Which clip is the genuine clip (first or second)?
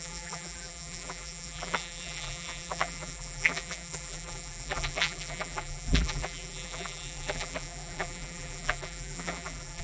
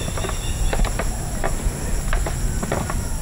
second